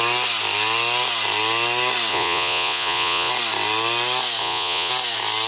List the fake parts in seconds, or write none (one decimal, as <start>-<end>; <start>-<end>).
2.1-3.3; 4.4-4.9